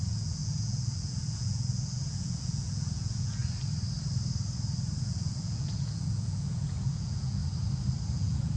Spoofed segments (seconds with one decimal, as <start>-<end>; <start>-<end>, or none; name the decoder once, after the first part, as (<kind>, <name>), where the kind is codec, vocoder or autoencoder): 0.0-3.4 (vocoder, Vocos); 5.0-7.4; 8.1-8.6